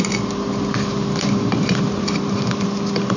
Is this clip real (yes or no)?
yes